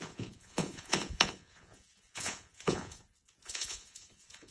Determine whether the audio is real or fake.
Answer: fake